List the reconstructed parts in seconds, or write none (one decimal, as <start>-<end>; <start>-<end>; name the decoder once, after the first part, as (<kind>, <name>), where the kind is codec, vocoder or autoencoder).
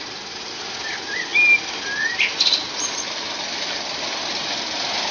none